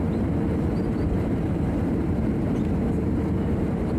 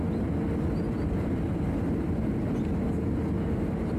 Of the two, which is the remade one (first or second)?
first